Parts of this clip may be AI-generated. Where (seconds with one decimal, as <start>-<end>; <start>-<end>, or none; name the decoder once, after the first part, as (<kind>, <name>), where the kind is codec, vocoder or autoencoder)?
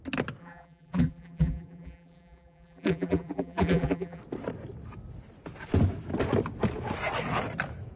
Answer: 0.4-4.2 (vocoder, BigVGAN v2)